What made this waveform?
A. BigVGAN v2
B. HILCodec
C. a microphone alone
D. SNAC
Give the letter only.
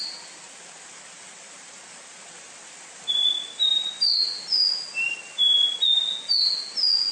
C